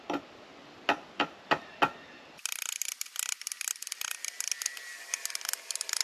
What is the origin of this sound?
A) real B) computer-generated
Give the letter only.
A